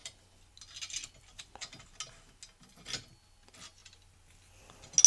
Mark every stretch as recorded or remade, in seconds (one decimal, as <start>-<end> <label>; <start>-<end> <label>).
0.0-5.1 recorded